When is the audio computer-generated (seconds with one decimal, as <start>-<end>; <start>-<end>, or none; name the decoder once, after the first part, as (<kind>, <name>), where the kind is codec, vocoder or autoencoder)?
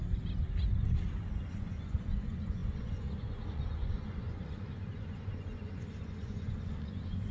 1.5-7.3 (vocoder, Vocos)